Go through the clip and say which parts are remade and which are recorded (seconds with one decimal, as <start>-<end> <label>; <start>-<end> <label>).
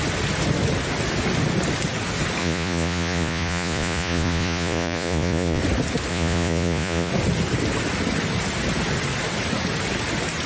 0.0-2.4 recorded; 2.4-5.6 remade; 5.6-6.1 recorded; 6.1-7.1 remade; 7.1-10.5 recorded